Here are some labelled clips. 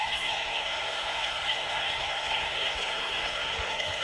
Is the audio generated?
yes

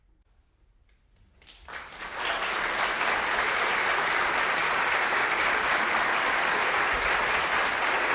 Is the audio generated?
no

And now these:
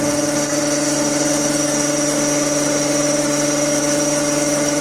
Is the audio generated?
no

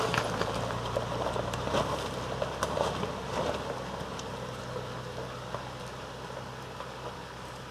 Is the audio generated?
no